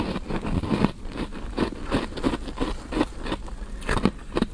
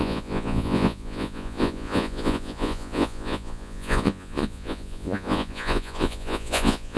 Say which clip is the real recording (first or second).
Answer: first